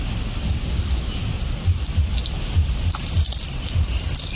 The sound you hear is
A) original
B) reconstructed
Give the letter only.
A